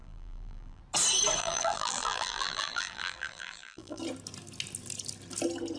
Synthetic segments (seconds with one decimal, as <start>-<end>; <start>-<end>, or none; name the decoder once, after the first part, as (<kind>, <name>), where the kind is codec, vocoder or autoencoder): 0.0-0.8 (vocoder, BigVGAN v2); 1.4-4.0